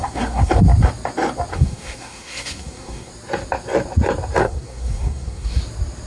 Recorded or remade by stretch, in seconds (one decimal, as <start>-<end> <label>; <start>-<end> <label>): 0.0-0.5 remade; 0.5-1.5 recorded; 1.5-3.1 remade; 3.1-4.4 recorded; 4.4-5.6 remade; 5.6-6.1 recorded